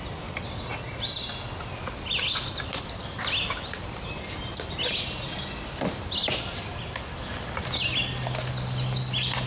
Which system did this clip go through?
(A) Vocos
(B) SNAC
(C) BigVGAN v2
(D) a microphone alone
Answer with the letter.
D